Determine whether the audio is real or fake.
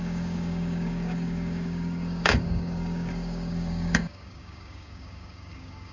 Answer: fake